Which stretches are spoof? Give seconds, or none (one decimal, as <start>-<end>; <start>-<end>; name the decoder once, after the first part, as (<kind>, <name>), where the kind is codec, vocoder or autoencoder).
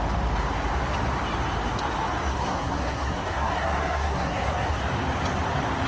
2.3-4.8 (codec, SNAC)